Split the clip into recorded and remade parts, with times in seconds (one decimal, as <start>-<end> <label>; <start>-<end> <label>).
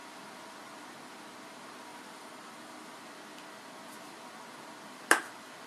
0.0-1.9 recorded; 1.9-3.0 remade; 3.0-5.7 recorded